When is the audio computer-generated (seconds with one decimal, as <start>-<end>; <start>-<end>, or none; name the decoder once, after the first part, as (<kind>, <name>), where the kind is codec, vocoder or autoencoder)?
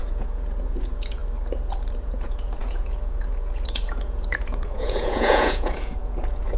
0.0-1.2 (vocoder, Vocos); 1.9-6.6